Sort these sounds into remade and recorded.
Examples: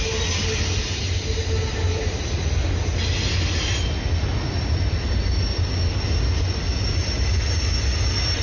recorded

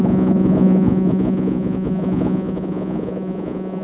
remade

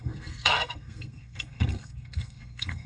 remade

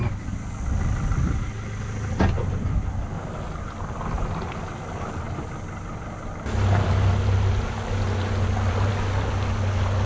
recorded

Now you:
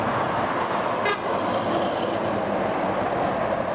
recorded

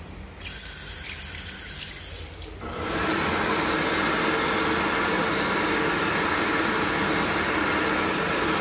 recorded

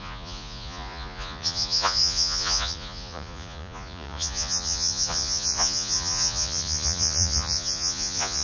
remade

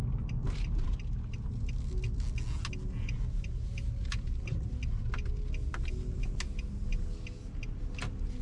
recorded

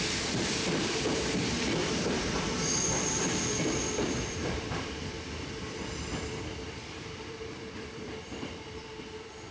remade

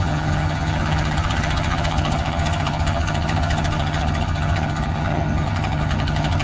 remade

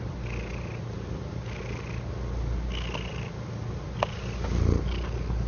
recorded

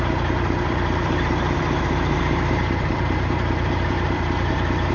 remade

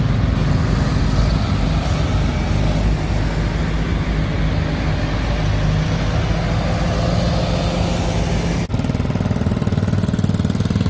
recorded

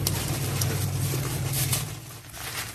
recorded